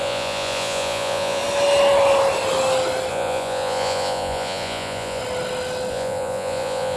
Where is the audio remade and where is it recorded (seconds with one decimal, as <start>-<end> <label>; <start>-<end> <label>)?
0.0-1.4 remade; 1.4-3.1 recorded; 3.1-5.2 remade; 5.2-5.9 recorded; 5.9-7.0 remade

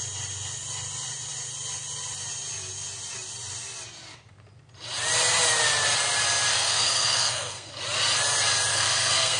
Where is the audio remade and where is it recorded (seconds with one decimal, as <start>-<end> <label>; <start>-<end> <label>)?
0.0-6.5 recorded; 6.5-7.7 remade; 7.7-8.7 recorded; 8.7-9.4 remade

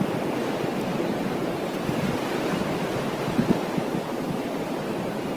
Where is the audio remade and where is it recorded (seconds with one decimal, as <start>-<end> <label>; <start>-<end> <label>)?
0.0-0.7 recorded; 0.7-3.9 remade; 3.9-5.4 recorded

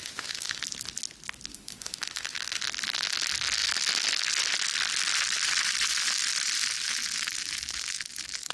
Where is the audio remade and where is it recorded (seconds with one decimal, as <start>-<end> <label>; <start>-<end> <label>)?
0.0-0.6 remade; 0.6-1.5 recorded; 1.5-2.6 remade; 2.6-8.5 recorded

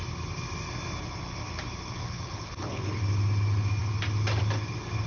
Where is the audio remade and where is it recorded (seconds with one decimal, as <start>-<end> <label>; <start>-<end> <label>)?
0.0-2.0 recorded; 2.0-3.0 remade; 3.0-5.1 recorded

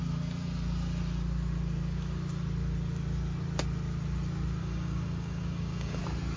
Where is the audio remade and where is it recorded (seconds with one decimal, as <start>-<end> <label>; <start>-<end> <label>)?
0.0-4.6 recorded; 4.6-6.0 remade; 6.0-6.4 recorded